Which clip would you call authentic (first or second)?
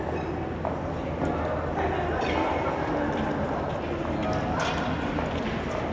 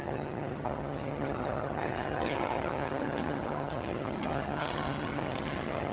first